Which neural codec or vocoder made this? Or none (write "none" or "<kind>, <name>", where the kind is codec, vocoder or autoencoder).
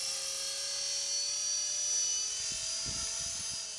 none